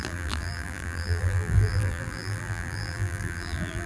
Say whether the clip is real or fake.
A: fake